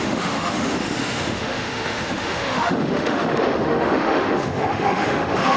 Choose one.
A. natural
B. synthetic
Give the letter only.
B